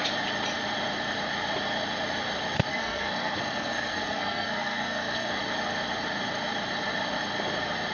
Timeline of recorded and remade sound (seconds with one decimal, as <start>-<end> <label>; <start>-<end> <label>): 0.0-2.7 recorded; 2.7-5.4 remade; 5.4-7.9 recorded